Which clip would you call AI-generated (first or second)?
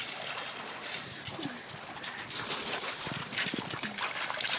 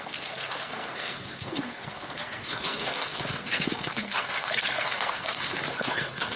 second